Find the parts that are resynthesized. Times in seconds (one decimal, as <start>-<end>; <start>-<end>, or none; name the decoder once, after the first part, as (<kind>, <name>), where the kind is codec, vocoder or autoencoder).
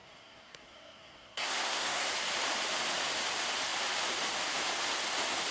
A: 0.0-2.1 (codec, SNAC)